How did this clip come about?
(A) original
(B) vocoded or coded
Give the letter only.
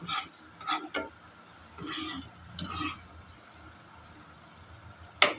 A